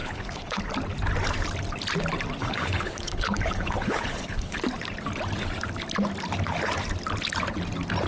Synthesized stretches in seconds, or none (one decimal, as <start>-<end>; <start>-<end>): 0.0-0.6; 2.4-4.6